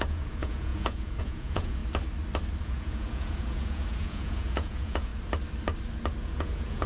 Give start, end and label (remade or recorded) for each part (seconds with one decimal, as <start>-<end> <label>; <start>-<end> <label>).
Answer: 0.0-1.8 remade; 1.8-2.6 recorded; 2.6-5.1 remade; 5.1-6.2 recorded; 6.2-6.9 remade